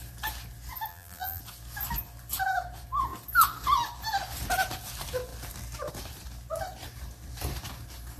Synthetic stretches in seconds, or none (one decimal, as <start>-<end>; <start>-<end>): 0.9-1.4